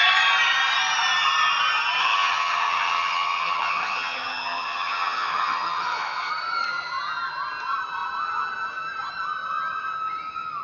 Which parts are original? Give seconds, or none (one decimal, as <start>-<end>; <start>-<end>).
0.0-2.0; 6.3-10.6